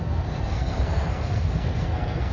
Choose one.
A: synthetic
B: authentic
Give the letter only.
A